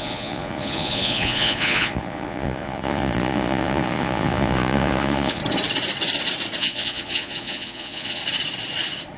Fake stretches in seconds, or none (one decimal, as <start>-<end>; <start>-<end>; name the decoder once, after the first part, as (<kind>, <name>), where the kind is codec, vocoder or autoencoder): 0.0-5.4 (vocoder, Vocos); 6.6-8.2